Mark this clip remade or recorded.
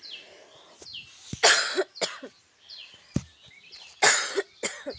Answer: recorded